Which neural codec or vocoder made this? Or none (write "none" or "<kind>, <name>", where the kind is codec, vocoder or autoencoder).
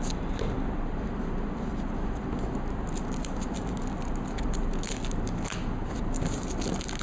none